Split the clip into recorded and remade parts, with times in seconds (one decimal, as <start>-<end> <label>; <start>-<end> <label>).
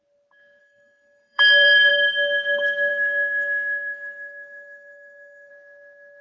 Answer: 0.0-0.6 recorded; 0.6-1.9 remade; 1.9-2.9 recorded; 2.9-5.5 remade; 5.5-6.2 recorded